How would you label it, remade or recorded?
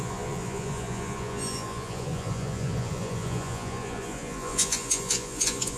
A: remade